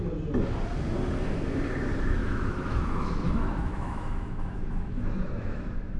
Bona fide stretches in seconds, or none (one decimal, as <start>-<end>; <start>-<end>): 0.0-2.2